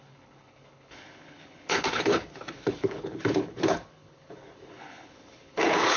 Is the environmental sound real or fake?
fake